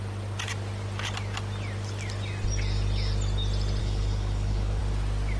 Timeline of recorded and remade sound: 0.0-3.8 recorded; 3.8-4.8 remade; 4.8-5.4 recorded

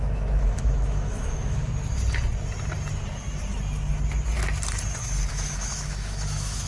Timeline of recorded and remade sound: 0.0-1.7 remade; 1.7-5.3 recorded; 5.3-6.7 remade

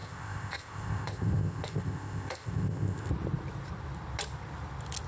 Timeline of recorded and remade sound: 0.0-3.1 remade; 3.1-5.1 recorded

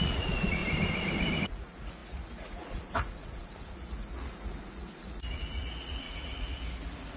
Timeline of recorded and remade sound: 0.0-0.6 remade; 0.6-1.4 recorded; 1.4-7.2 remade

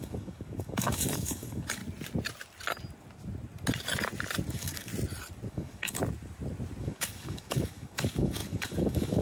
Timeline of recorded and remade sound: 0.0-1.8 remade; 1.8-4.5 recorded; 4.5-4.9 remade; 4.9-5.5 recorded; 5.5-6.0 remade; 6.0-6.8 recorded; 6.8-9.2 remade

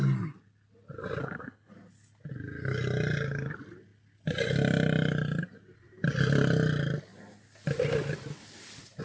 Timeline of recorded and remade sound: 0.0-1.2 recorded; 1.2-1.7 remade; 1.7-9.0 recorded

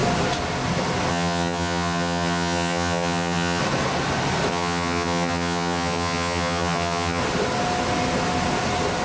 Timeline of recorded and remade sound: 0.0-1.1 recorded; 1.1-3.6 remade; 3.6-4.5 recorded; 4.5-7.2 remade; 7.2-9.0 recorded